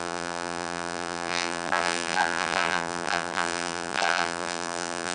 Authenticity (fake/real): fake